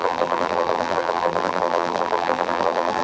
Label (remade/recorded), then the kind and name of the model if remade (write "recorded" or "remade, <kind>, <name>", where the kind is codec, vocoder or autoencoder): remade, vocoder, BigVGAN v2